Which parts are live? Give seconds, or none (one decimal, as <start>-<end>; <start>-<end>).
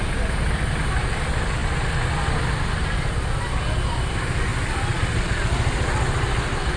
1.6-4.1; 4.5-6.8